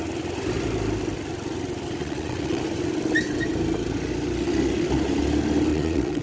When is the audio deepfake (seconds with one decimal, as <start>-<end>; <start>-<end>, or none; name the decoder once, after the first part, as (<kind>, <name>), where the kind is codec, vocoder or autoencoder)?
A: 2.0-2.6 (vocoder, WaveNeXt); 5.7-6.2

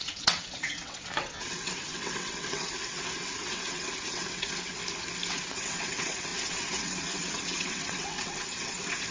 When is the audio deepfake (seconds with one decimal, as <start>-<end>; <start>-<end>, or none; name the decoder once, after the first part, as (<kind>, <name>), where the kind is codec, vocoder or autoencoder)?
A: 0.0-4.8 (vocoder, WaveNeXt); 5.3-9.1